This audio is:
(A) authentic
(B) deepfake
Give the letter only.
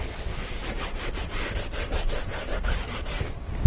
A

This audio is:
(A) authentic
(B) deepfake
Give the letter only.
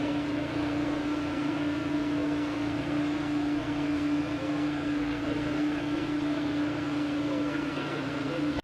B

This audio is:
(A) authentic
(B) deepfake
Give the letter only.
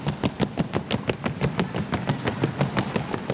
A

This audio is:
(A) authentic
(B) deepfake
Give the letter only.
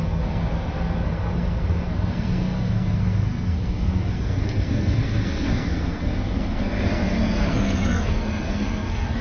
B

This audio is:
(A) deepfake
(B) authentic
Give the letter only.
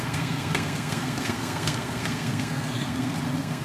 A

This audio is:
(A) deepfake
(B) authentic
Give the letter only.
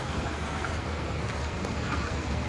A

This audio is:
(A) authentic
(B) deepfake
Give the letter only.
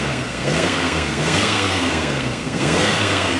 B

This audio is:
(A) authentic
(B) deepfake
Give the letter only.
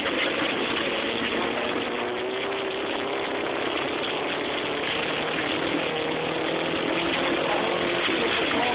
A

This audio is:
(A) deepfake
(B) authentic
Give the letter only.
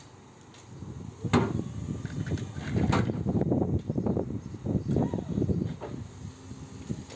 B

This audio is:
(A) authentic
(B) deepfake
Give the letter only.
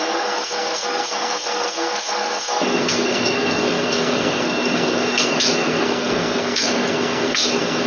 B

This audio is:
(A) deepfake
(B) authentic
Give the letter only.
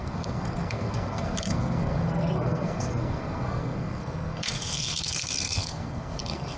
A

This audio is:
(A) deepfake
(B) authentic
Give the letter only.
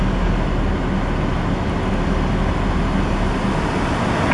B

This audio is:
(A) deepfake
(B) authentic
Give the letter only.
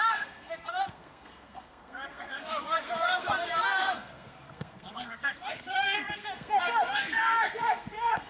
A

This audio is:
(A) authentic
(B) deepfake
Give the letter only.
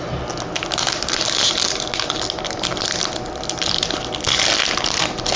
A